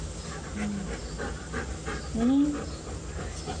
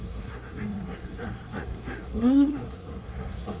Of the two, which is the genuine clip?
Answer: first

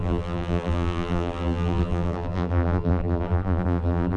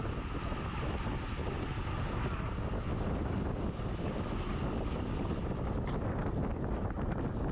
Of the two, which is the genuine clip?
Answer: second